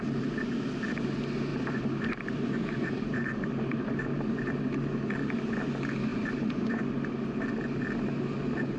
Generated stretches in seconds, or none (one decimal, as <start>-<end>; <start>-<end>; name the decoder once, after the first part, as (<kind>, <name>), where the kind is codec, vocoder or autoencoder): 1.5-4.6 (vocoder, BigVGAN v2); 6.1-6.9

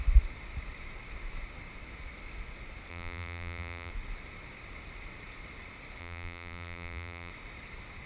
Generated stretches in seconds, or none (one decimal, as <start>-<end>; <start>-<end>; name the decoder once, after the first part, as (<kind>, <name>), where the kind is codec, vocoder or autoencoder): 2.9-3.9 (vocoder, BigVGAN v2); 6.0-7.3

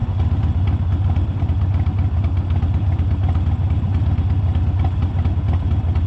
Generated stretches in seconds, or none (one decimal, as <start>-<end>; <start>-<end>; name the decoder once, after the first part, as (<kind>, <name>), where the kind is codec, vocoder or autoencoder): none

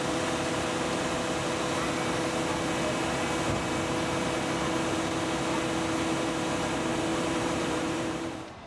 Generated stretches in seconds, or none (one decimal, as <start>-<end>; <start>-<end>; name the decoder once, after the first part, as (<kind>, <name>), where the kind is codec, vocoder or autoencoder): 7.1-8.7 (vocoder, BigVGAN v2)

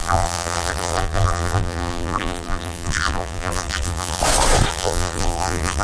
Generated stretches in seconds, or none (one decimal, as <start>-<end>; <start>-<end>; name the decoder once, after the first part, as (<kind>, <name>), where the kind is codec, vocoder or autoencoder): 0.0-4.2 (vocoder, BigVGAN v2); 4.7-5.8

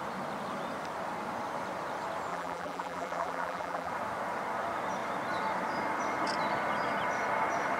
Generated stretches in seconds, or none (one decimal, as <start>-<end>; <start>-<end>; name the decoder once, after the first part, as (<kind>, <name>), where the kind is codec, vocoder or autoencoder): 2.3-3.9 (vocoder, BigVGAN v2)

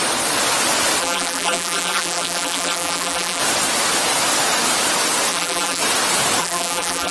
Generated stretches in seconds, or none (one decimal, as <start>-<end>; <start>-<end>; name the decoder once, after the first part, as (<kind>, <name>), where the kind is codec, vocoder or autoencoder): 1.0-3.4 (vocoder, BigVGAN v2); 5.3-5.8; 6.4-7.1

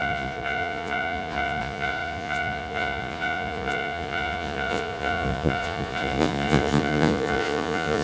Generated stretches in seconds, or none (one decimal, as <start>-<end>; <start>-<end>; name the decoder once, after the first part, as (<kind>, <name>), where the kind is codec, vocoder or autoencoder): 0.0-8.0 (vocoder, Vocos)